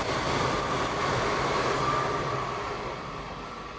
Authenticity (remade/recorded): recorded